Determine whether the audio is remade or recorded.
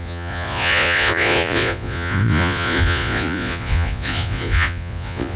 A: remade